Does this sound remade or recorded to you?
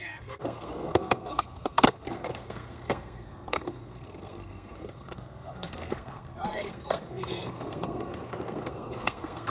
remade